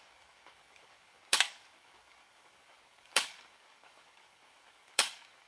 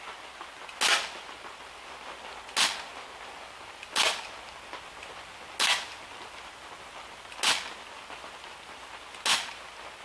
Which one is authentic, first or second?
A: second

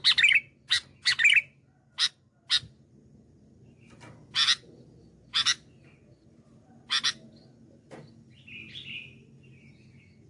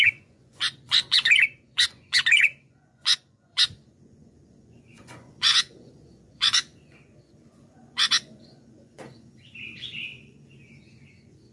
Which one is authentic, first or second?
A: first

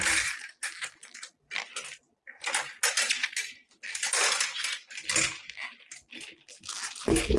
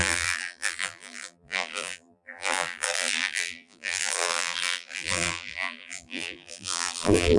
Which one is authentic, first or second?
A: first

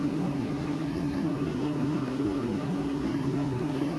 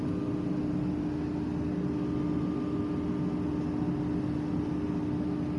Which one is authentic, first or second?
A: second